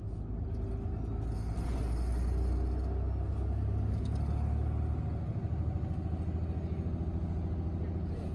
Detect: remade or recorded recorded